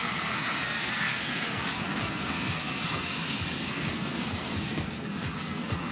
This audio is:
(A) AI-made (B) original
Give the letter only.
A